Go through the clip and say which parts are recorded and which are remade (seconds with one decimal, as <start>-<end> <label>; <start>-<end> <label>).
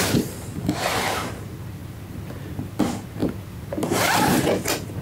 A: 0.0-5.0 recorded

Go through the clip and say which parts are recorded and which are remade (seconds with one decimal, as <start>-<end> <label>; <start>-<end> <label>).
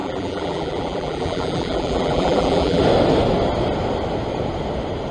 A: 0.0-2.8 remade; 2.8-5.1 recorded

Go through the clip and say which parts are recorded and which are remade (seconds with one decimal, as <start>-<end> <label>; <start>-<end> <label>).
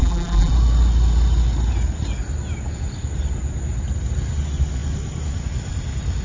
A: 0.0-0.5 remade; 0.5-6.2 recorded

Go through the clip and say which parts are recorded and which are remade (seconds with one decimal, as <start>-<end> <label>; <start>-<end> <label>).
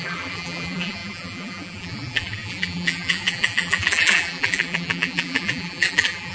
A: 0.0-6.3 remade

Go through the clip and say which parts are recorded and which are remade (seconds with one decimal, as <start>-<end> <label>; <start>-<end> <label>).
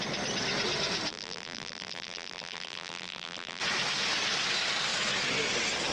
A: 0.0-1.1 recorded; 1.1-3.6 remade; 3.6-5.9 recorded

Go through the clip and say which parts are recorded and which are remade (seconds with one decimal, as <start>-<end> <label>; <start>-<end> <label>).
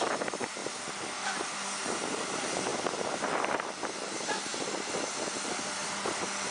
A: 0.0-0.6 remade; 0.6-1.3 recorded; 1.3-4.5 remade; 4.5-6.5 recorded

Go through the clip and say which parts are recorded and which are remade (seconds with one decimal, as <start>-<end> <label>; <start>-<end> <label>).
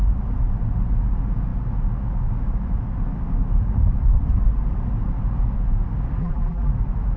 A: 0.0-6.2 recorded; 6.2-6.7 remade; 6.7-7.2 recorded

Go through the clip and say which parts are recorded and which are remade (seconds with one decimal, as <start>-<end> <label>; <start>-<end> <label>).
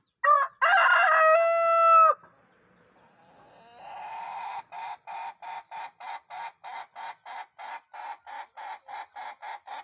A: 0.0-9.8 recorded